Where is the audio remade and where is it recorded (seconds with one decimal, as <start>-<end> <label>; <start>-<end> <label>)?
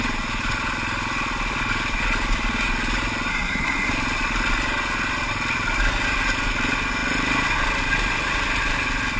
0.0-3.3 recorded; 3.3-3.9 remade; 3.9-9.2 recorded